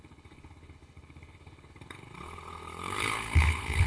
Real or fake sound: fake